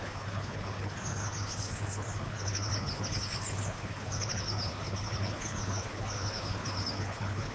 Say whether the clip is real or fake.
fake